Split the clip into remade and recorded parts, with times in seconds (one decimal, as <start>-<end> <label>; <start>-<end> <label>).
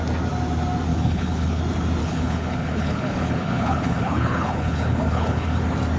0.0-0.9 recorded; 0.9-1.6 remade; 1.6-2.0 recorded; 2.0-5.6 remade; 5.6-6.0 recorded